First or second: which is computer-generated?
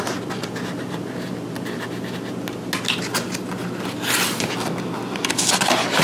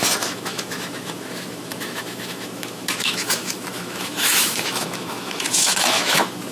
second